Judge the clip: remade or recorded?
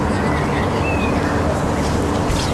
recorded